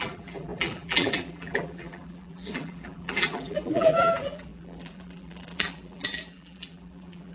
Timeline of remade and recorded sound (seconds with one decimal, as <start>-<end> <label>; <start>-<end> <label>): 0.0-7.3 remade

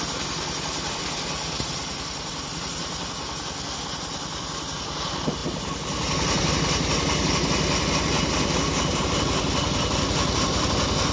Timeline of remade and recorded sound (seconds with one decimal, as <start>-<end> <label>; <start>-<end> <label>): 0.0-11.1 recorded